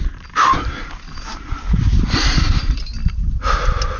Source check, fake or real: real